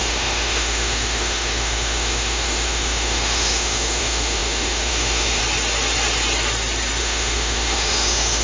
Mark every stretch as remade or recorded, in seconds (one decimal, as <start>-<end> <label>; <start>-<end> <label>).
0.0-5.4 remade; 5.4-7.0 recorded; 7.0-8.4 remade